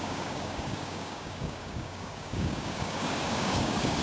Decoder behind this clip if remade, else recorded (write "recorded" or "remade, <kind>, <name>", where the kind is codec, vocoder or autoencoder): remade, codec, DAC